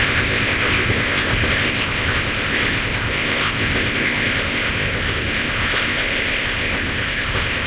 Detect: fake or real fake